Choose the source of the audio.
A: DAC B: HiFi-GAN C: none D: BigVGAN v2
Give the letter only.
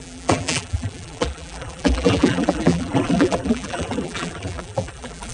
D